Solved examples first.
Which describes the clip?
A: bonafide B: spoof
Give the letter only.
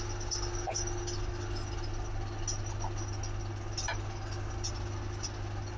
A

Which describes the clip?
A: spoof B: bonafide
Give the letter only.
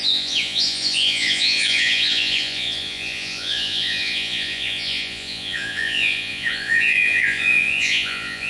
A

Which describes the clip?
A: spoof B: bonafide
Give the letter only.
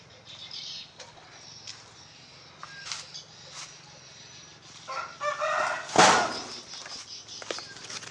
B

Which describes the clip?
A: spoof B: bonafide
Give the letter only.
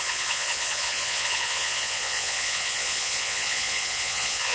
A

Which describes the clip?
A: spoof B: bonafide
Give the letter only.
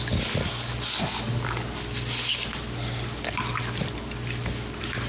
B